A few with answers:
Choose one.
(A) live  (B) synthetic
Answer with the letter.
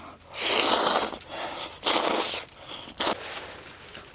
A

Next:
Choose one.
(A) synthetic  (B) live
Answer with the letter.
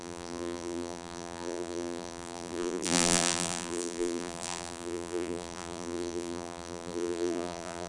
A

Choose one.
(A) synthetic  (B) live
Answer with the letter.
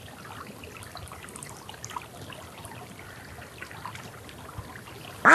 B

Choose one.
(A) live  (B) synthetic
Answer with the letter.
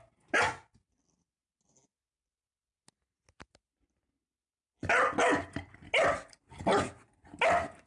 A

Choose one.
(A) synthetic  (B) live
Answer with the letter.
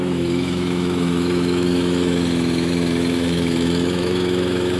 A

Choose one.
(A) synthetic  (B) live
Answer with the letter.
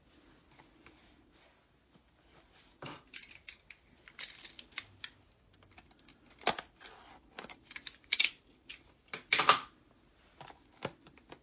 B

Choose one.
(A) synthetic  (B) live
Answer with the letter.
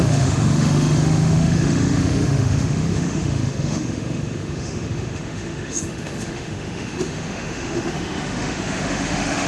A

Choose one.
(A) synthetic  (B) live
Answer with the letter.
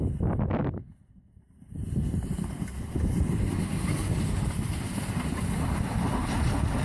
B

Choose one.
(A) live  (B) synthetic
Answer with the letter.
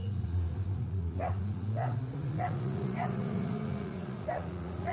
B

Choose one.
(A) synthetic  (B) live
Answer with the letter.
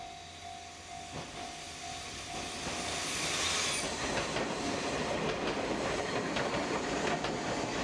B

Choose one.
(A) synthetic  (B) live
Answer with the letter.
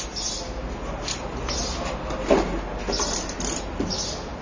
B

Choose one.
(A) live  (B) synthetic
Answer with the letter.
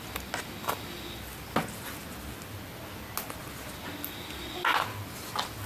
A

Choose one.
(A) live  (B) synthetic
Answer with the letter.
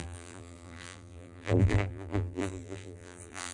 B